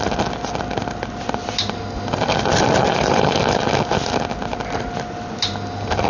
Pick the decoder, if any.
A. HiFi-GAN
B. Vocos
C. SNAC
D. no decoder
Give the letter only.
D